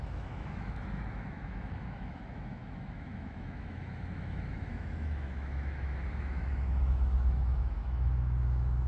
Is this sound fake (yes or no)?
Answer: yes